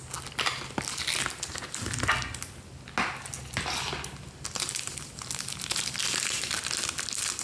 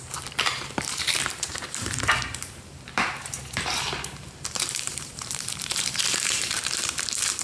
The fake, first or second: second